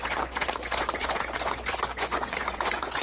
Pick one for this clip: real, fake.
fake